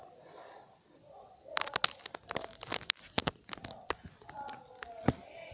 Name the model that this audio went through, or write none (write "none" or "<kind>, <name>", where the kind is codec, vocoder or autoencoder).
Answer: none